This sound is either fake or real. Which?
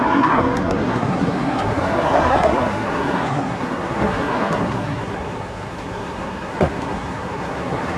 fake